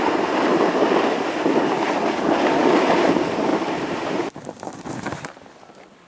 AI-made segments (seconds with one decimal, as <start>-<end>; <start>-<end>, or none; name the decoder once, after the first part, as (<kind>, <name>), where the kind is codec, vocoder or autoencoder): 3.5-4.2 (vocoder, BigVGAN v2)